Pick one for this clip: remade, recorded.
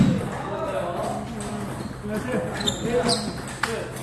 recorded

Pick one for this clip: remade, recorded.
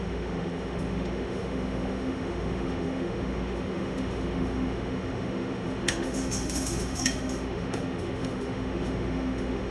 remade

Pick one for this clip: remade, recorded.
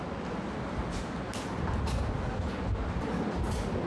recorded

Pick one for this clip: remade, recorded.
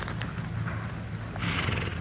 recorded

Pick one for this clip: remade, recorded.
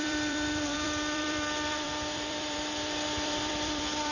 remade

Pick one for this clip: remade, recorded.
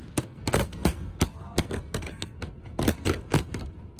remade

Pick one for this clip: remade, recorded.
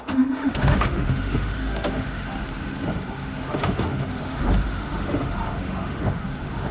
remade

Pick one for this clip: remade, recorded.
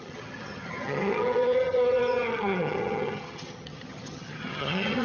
remade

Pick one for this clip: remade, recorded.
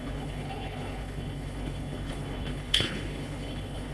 remade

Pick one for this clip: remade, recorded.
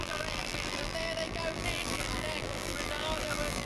remade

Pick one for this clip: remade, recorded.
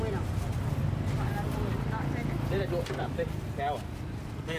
recorded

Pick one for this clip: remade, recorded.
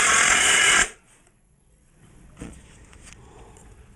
remade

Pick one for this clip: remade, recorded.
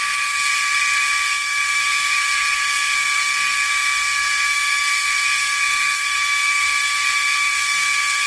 remade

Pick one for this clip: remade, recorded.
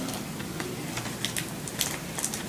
recorded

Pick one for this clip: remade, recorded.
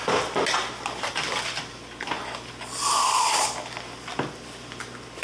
recorded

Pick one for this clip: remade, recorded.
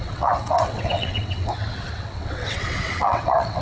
remade